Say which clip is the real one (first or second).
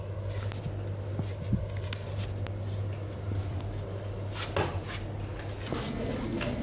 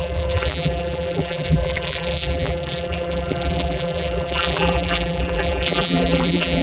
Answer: first